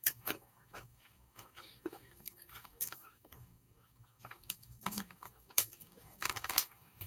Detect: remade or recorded remade